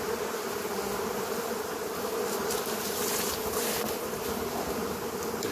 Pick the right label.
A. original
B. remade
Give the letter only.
A